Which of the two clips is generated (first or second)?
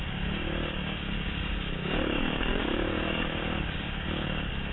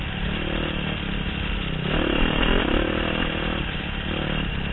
first